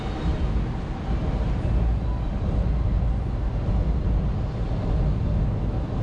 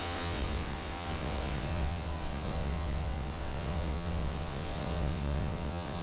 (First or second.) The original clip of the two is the first